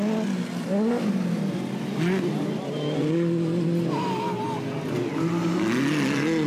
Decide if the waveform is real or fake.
real